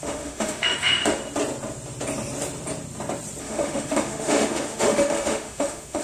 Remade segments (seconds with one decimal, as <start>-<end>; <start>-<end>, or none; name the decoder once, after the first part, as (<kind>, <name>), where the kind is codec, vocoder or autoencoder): 0.0-1.2 (autoencoder, DAC-VAE); 3.4-6.0